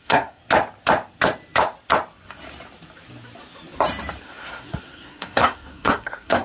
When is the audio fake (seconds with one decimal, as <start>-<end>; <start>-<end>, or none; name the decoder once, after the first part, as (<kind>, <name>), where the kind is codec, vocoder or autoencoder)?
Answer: 0.0-0.4 (codec, SNAC); 4.2-6.4